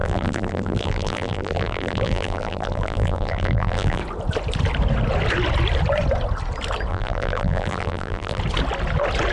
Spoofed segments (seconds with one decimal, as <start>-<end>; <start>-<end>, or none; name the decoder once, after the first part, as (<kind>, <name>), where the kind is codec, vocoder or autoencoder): 0.0-4.0 (vocoder, BigVGAN v2); 6.9-8.4